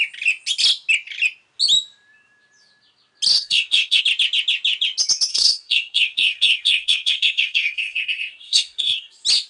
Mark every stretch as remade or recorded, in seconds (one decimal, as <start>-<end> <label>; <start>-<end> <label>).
0.0-3.3 recorded; 3.3-4.0 remade; 4.0-5.3 recorded; 5.3-9.1 remade; 9.1-9.5 recorded